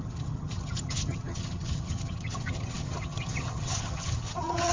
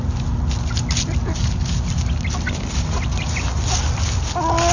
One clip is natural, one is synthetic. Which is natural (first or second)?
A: second